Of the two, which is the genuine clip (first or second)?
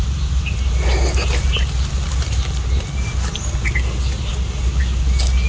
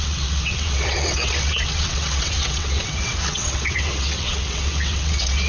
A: first